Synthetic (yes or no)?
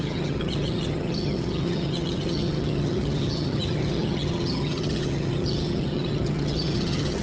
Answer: yes